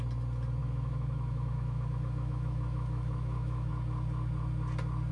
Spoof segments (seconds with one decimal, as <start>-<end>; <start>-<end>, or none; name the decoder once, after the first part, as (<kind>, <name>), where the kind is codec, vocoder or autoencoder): 0.6-3.7 (autoencoder, DAC-VAE)

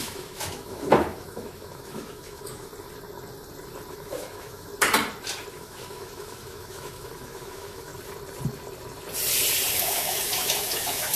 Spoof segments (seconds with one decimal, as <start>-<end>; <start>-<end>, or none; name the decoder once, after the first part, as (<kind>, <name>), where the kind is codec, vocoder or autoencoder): 0.0-2.7 (autoencoder, DAC-VAE); 3.9-4.7; 5.5-7.9; 9.7-11.2

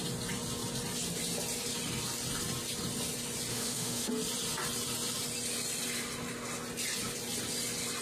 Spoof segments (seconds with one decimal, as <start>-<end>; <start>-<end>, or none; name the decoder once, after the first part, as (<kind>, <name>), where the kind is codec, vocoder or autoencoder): 3.5-4.1 (autoencoder, DAC-VAE)